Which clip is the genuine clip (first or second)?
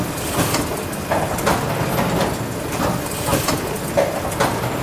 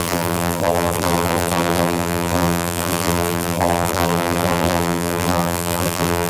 first